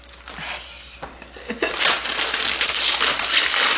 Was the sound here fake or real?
real